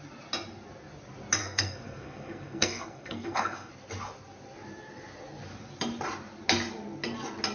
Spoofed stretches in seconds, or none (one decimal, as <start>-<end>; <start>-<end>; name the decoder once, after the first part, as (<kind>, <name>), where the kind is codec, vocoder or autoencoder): 1.4-3.7 (codec, SNAC)